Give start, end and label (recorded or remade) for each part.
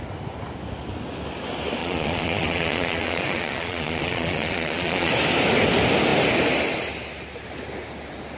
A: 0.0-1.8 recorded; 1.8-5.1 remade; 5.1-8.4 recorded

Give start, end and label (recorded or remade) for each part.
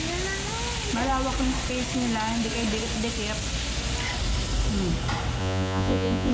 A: 0.0-5.4 recorded; 5.4-6.3 remade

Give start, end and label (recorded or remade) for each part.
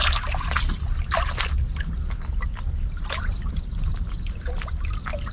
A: 0.0-5.3 recorded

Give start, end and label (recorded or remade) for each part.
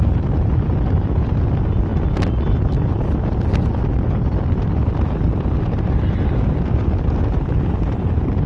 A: 0.0-8.5 recorded